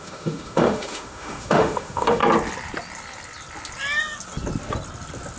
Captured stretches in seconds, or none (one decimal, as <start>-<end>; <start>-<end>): 2.2-5.4